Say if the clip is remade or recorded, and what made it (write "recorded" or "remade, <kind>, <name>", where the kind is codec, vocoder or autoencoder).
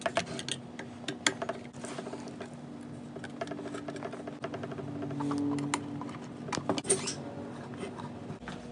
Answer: recorded